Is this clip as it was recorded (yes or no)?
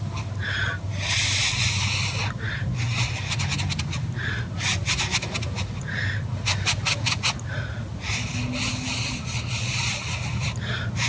yes